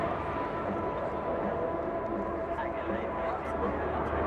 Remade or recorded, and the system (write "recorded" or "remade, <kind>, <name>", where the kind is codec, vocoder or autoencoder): recorded